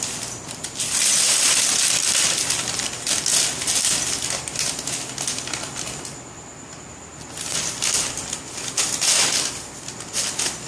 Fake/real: real